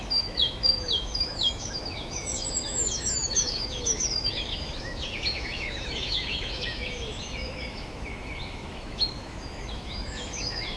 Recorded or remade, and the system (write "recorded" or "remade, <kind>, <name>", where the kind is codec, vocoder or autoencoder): remade, autoencoder, DAC-VAE